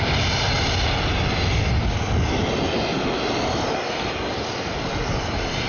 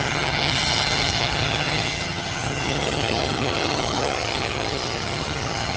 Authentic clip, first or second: first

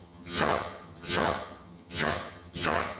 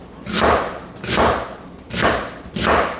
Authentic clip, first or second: second